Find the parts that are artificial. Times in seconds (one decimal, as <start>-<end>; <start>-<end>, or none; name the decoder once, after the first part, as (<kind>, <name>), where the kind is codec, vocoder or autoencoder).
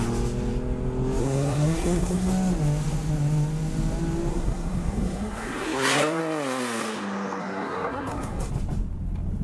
1.2-2.3 (codec, SNAC); 4.3-6.2; 7.4-8.5